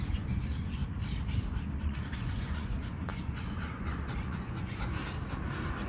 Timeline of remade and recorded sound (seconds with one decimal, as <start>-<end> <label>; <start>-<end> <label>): 0.0-0.8 remade; 0.8-1.8 recorded; 1.8-5.0 remade; 5.0-5.9 recorded